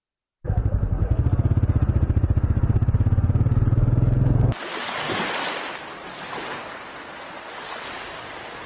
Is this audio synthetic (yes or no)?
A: no